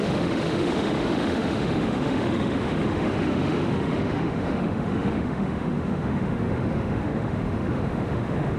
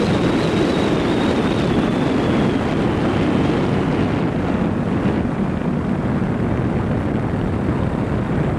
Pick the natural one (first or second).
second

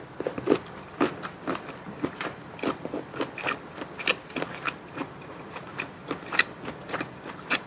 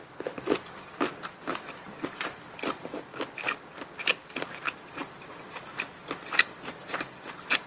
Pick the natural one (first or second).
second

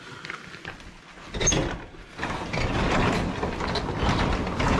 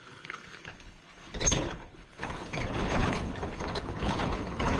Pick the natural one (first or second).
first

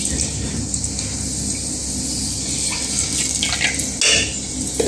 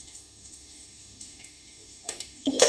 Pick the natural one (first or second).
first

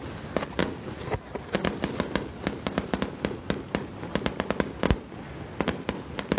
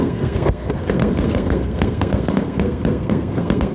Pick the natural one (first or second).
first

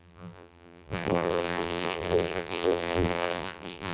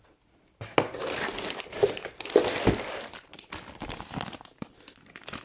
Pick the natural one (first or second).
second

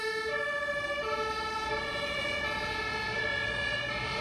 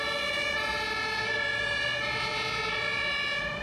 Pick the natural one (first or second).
second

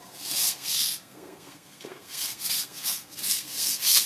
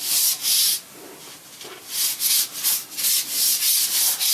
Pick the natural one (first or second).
second